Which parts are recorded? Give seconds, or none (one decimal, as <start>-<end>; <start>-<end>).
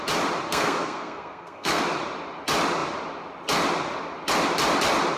0.0-0.5; 1.8-5.2